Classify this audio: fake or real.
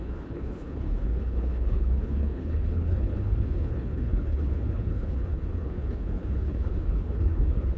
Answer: fake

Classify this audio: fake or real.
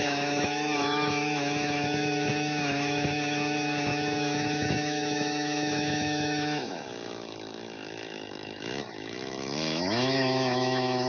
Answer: fake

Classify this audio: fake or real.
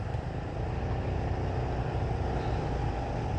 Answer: real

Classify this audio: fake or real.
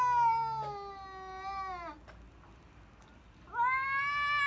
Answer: real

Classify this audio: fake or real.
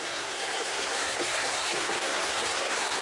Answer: fake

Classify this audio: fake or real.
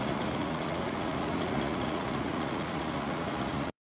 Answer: fake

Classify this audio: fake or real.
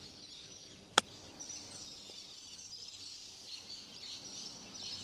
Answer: real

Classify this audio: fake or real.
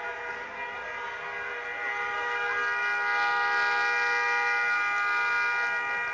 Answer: real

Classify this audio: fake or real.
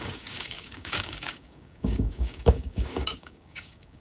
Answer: fake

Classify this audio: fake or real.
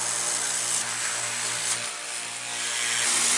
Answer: real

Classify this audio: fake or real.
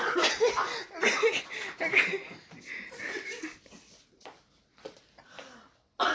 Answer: real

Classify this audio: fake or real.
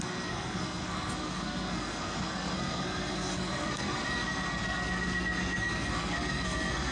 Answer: fake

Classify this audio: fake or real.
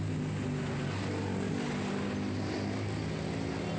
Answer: real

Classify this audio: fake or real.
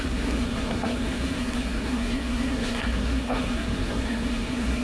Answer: fake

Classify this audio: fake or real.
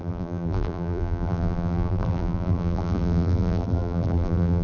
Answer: fake